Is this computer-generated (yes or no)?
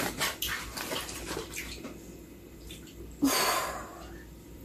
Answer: yes